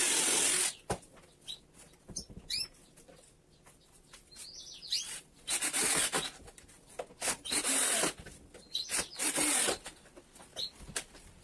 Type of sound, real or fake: real